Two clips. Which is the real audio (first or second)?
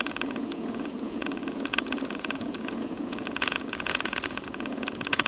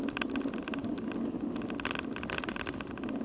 second